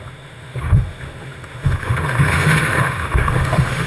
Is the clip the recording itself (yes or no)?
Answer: no